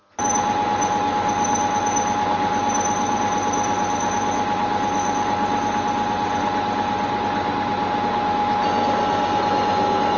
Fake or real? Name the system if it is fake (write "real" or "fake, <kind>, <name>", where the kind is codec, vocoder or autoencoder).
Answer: real